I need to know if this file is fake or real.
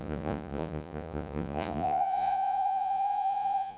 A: fake